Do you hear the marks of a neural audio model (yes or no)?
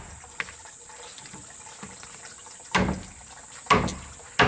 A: no